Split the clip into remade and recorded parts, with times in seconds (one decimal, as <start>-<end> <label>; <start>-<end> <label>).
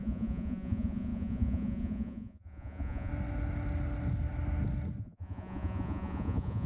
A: 0.0-3.1 remade; 3.1-5.0 recorded; 5.0-6.7 remade